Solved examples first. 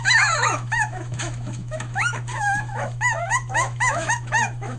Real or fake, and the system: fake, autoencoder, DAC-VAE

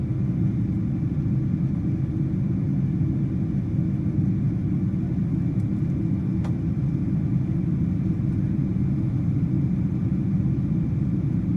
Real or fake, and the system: real